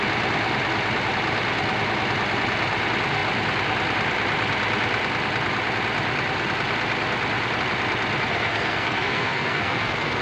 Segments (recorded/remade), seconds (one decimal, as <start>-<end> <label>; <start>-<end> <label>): 0.0-8.3 recorded; 8.3-10.2 remade